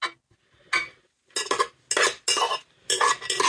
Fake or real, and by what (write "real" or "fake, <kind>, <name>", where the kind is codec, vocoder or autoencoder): real